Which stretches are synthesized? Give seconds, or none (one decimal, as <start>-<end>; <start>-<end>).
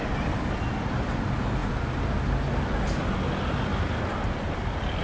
none